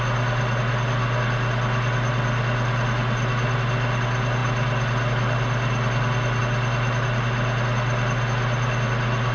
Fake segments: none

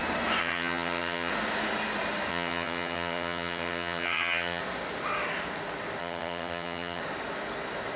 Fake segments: 0.4-1.3 (vocoder, HiFi-GAN); 2.3-4.6; 6.0-7.0

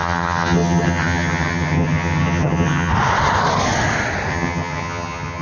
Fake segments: 0.0-2.9 (vocoder, HiFi-GAN); 4.3-5.4